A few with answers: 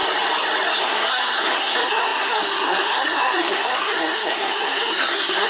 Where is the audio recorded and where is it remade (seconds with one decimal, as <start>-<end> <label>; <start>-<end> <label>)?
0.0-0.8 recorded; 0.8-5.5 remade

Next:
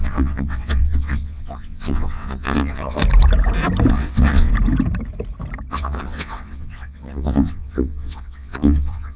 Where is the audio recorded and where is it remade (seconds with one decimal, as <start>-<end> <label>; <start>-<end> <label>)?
0.0-3.0 remade; 3.0-3.9 recorded; 3.9-4.5 remade; 4.5-5.7 recorded; 5.7-9.2 remade

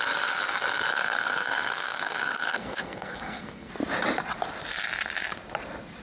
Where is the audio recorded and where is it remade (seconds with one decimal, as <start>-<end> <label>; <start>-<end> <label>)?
0.0-0.9 recorded; 0.9-3.7 remade; 3.7-6.0 recorded

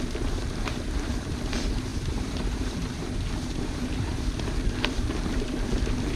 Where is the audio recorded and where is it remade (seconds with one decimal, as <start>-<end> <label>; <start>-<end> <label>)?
0.0-0.4 recorded; 0.4-1.1 remade; 1.1-1.9 recorded; 1.9-5.6 remade; 5.6-6.2 recorded

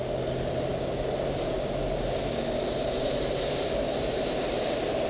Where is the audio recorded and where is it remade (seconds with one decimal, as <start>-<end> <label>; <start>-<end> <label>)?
0.0-5.1 recorded

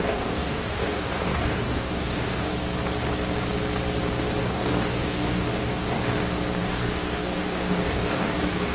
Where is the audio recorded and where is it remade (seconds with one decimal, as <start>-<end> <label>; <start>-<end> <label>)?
0.0-2.5 remade; 2.5-4.4 recorded; 4.4-6.0 remade; 6.0-6.6 recorded; 6.6-8.7 remade

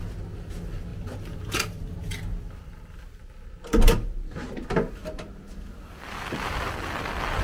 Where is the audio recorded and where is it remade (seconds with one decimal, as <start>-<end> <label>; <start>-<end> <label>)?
0.0-7.4 recorded